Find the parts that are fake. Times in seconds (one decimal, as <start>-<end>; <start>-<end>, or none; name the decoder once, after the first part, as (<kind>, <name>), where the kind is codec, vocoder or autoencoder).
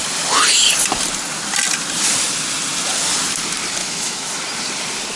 3.8-4.4 (autoencoder, DAC-VAE)